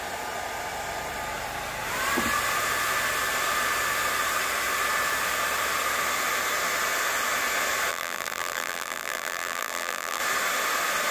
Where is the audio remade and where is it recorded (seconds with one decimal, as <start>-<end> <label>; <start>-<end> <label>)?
0.0-7.9 recorded; 7.9-10.2 remade; 10.2-11.1 recorded